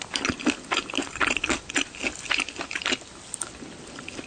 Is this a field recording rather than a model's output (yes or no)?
yes